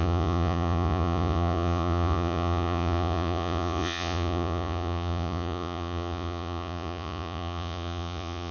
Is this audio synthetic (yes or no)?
yes